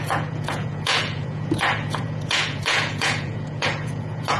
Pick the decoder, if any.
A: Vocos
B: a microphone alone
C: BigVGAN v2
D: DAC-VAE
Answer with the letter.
A